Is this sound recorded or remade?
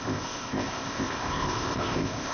remade